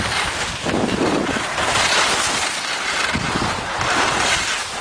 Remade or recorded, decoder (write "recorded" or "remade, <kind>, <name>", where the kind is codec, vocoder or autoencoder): recorded